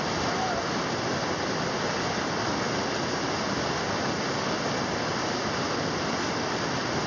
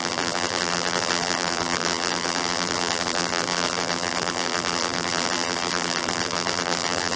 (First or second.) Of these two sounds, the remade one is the second